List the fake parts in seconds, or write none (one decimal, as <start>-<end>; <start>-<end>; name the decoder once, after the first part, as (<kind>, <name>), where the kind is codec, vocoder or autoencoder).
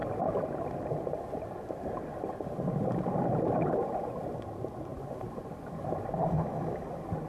none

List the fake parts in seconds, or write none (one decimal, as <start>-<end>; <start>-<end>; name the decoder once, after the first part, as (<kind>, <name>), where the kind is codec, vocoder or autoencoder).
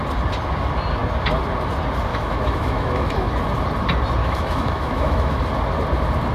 2.1-3.3 (autoencoder, DAC-VAE); 4.2-5.4